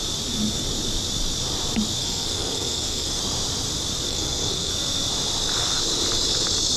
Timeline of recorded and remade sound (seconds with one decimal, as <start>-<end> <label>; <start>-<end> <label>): 0.0-2.0 recorded; 2.0-3.2 remade; 3.2-4.1 recorded; 4.1-4.7 remade; 4.7-6.8 recorded